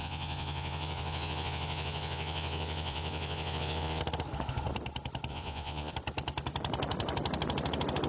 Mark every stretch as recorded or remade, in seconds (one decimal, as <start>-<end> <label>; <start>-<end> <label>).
0.0-4.0 remade; 4.0-5.3 recorded; 5.3-5.9 remade; 5.9-8.1 recorded